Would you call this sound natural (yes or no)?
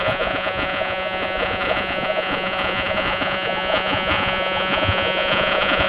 no